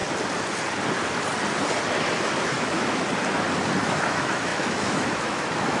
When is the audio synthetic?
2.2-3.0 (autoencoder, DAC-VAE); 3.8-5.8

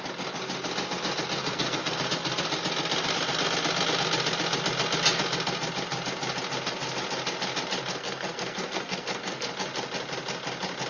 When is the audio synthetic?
1.4-2.1 (codec, SNAC); 7.9-9.5

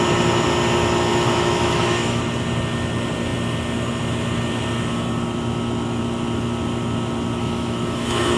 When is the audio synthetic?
1.1-2.2 (autoencoder, DAC-VAE); 7.4-8.4

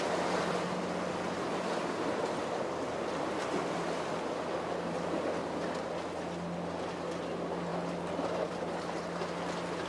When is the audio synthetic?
none

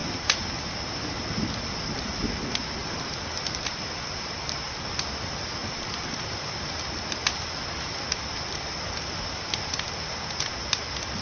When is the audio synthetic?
2.8-4.8 (vocoder, BigVGAN v2); 5.6-6.6

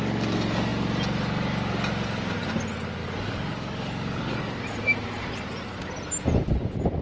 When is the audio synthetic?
3.0-4.4 (codec, DAC)

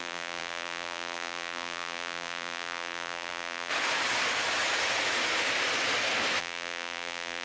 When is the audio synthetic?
0.0-3.7 (vocoder, BigVGAN v2); 6.4-7.4